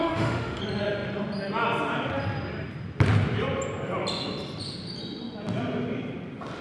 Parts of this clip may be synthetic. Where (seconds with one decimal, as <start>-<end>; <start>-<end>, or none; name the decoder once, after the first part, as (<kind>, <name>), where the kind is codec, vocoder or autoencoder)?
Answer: 0.0-0.6 (autoencoder, DAC-VAE)